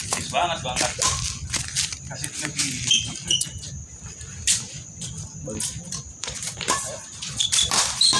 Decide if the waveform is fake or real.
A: real